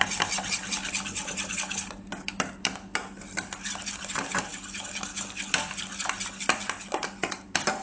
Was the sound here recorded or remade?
remade